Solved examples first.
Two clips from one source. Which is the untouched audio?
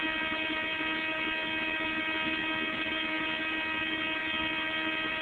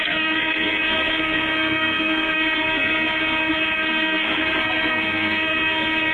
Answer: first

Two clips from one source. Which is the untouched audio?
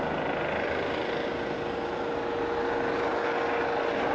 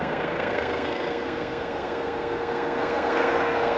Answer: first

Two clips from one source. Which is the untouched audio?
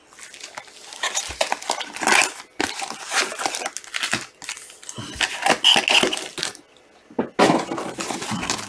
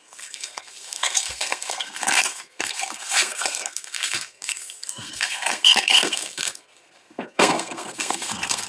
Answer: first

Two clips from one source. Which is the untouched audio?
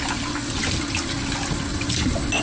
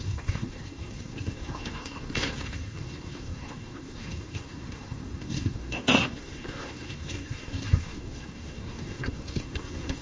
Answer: first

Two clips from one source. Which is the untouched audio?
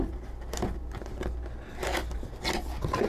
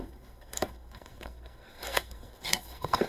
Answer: first